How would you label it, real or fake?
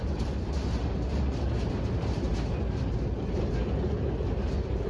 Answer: real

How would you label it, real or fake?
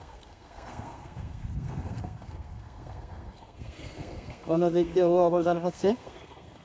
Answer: fake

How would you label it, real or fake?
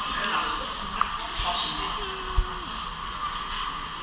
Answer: real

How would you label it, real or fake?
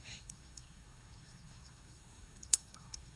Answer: fake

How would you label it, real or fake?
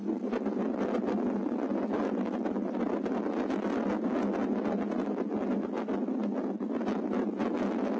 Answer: real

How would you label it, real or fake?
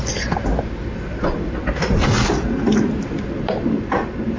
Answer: real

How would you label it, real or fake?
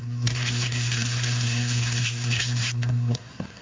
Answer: fake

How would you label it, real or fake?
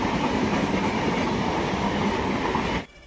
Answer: real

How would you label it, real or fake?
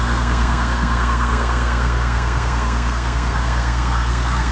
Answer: fake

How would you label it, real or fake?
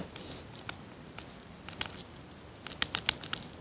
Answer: real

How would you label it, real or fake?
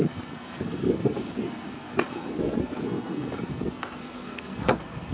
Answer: fake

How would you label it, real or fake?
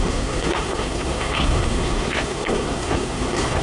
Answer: fake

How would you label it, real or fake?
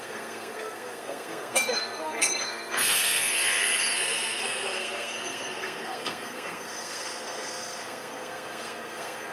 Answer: fake